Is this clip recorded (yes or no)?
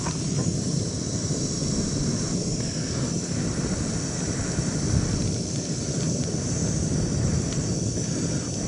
yes